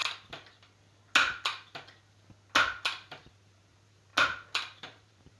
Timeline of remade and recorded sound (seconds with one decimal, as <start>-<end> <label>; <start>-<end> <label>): 0.0-3.2 recorded; 3.2-4.1 remade; 4.1-4.8 recorded; 4.8-5.4 remade